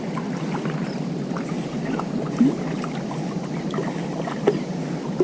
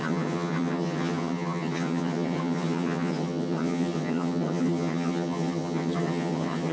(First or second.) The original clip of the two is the first